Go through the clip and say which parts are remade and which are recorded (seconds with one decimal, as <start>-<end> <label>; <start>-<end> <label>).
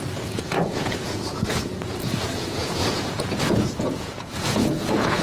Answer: 0.0-5.2 remade